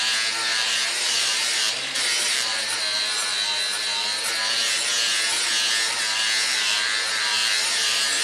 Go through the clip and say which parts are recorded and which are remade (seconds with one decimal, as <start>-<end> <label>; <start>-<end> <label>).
0.0-0.5 recorded; 0.5-2.8 remade; 2.8-6.5 recorded; 6.5-8.2 remade